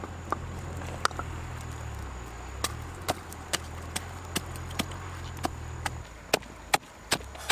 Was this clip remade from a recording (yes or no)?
no